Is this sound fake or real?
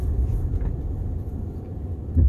real